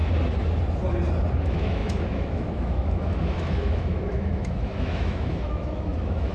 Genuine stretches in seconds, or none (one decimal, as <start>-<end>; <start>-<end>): 0.0-1.4